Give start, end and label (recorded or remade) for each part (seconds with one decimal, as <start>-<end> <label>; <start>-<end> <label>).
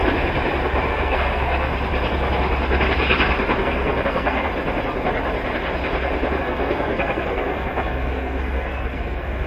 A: 0.0-0.9 recorded; 0.9-1.7 remade; 1.7-3.6 recorded; 3.6-4.5 remade; 4.5-6.4 recorded; 6.4-9.5 remade